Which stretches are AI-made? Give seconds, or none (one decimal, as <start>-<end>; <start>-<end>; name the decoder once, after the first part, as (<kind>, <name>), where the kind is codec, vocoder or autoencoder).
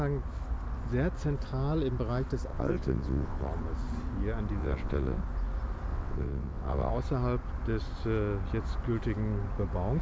2.5-3.5 (vocoder, WaveNeXt); 4.6-5.2; 5.9-6.9